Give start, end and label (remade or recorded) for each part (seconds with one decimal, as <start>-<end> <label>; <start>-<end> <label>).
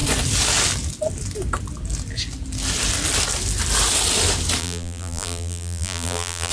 0.0-4.6 recorded; 4.6-6.5 remade